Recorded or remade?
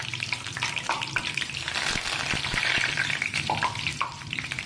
recorded